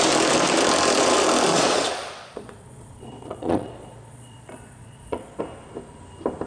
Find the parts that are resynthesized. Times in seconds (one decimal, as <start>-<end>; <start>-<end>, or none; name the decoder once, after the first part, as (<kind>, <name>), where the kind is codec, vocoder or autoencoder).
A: 1.5-5.4 (vocoder, Vocos)